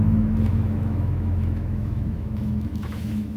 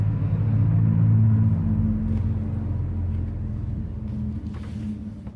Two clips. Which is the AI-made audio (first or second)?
first